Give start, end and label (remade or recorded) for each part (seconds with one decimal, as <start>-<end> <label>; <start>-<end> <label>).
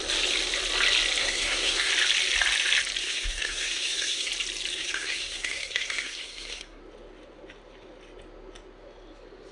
0.0-1.2 recorded; 1.2-1.9 remade; 1.9-3.0 recorded; 3.0-4.3 remade; 4.3-4.7 recorded; 4.7-6.8 remade; 6.8-9.5 recorded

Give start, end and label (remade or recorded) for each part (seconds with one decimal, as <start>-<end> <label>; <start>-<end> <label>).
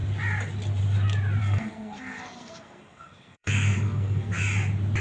0.0-1.4 recorded; 1.4-4.4 remade; 4.4-5.0 recorded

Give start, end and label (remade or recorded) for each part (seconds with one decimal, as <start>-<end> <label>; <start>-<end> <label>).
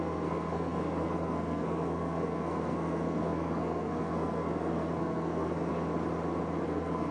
0.0-5.7 remade; 5.7-6.6 recorded; 6.6-7.1 remade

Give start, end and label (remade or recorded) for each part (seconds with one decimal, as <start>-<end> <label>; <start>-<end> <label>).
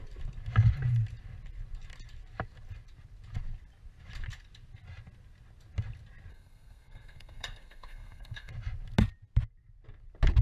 0.0-6.3 recorded; 6.3-8.5 remade; 8.5-10.4 recorded